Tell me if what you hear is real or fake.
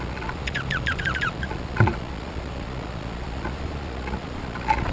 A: fake